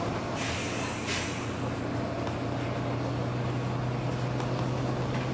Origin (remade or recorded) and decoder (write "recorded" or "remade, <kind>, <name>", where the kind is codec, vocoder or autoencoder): recorded